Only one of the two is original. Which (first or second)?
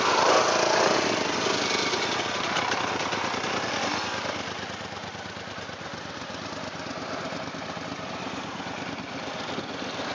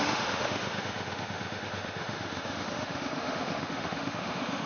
first